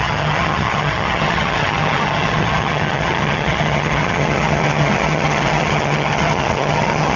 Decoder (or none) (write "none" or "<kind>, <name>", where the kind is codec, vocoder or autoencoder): vocoder, HiFi-GAN